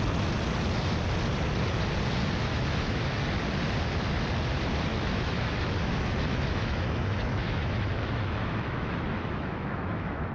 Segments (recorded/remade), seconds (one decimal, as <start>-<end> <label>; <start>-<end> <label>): 0.0-2.5 recorded; 2.5-3.0 remade; 3.0-4.9 recorded; 4.9-10.3 remade